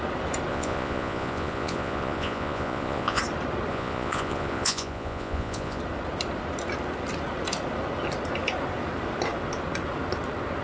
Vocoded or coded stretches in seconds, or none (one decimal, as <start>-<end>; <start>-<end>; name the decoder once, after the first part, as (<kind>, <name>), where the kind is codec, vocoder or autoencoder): 0.5-3.2 (vocoder, Vocos); 3.7-5.8